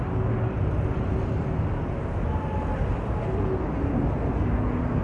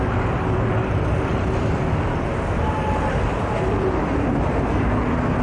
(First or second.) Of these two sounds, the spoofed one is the second